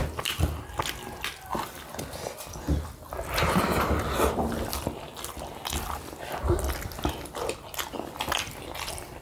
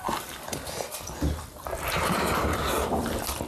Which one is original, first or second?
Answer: first